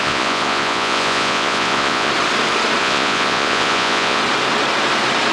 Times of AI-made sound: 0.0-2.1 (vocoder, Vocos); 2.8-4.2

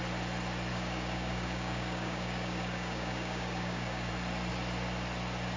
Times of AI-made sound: 0.7-4.1 (codec, DAC)

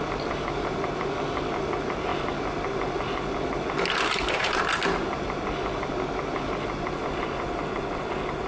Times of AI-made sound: none

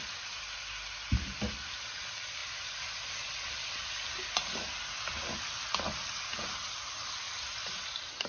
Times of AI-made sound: none

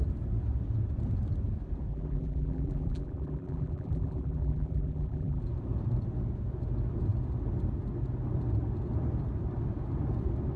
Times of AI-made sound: 1.9-5.4 (vocoder, BigVGAN v2)